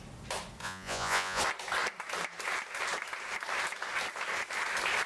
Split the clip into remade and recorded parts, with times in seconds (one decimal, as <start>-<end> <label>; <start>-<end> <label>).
0.0-0.6 recorded; 0.6-1.4 remade; 1.4-5.1 recorded